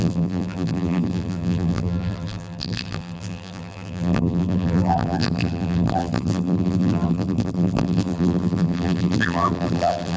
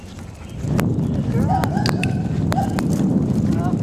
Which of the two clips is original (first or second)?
second